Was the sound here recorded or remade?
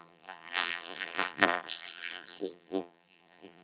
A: remade